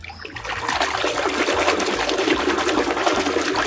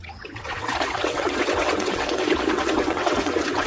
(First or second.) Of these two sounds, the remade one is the second